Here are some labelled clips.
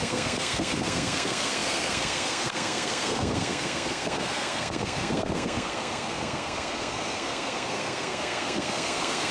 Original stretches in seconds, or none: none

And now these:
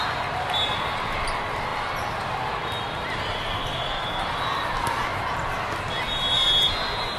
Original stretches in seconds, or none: 0.0-7.2

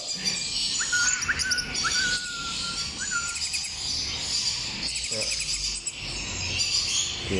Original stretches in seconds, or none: 0.0-7.4

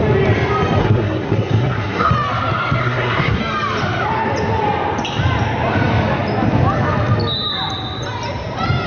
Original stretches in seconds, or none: 0.0-0.8; 2.1-2.8; 3.4-8.9

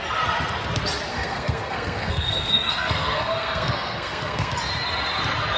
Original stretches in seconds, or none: 0.0-1.1; 4.5-5.6

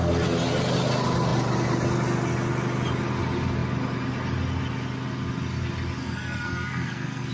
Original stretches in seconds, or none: 0.0-6.0

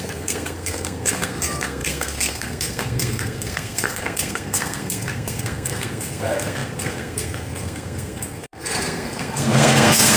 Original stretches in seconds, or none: none

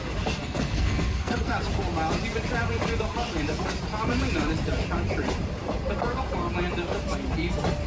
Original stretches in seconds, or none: 0.0-0.4; 1.5-7.9